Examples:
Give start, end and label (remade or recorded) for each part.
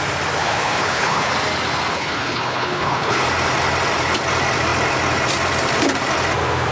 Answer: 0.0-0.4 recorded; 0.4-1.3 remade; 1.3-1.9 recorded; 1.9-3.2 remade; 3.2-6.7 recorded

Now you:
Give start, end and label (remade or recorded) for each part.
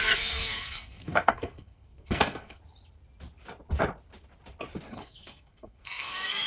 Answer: 0.0-2.6 remade; 2.6-4.9 recorded; 4.9-6.5 remade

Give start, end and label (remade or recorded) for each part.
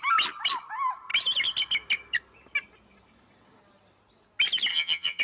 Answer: 0.0-4.7 recorded; 4.7-5.2 remade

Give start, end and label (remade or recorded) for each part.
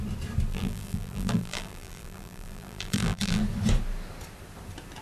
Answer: 0.0-0.5 recorded; 0.5-3.4 remade; 3.4-5.0 recorded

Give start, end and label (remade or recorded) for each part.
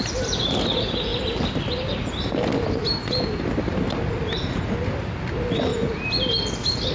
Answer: 0.0-6.9 recorded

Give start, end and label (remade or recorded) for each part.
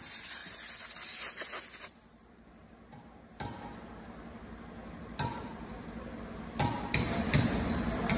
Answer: 0.0-0.4 remade; 0.4-1.8 recorded; 1.8-2.6 remade; 2.6-5.0 recorded; 5.0-8.2 remade